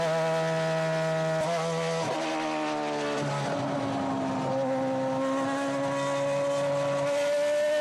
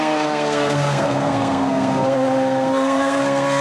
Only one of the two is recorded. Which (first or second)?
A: first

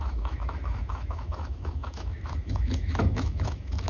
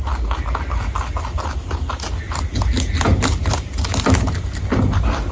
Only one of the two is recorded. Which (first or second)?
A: second